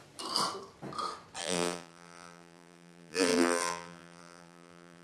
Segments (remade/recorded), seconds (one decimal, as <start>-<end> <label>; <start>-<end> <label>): 0.0-1.4 recorded; 1.4-5.0 remade